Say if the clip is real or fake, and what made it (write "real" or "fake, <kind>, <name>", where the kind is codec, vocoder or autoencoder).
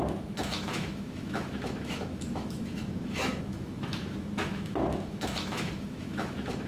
fake, autoencoder, DAC-VAE